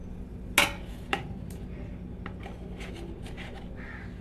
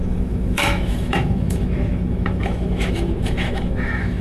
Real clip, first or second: first